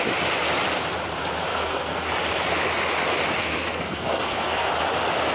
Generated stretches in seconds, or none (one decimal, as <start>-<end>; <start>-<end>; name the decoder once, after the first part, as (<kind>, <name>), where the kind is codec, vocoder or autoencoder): 1.5-2.1 (codec, SNAC); 3.4-4.7